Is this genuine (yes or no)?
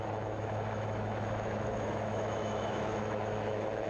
no